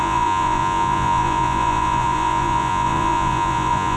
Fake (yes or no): yes